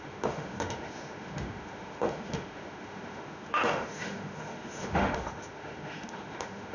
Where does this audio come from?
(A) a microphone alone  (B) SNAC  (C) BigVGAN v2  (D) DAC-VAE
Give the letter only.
D